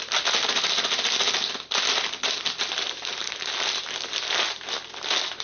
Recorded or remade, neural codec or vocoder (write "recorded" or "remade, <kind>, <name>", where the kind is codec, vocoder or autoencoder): recorded